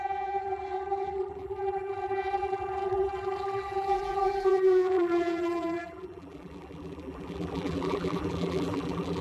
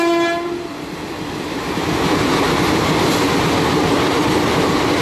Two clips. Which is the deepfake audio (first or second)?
first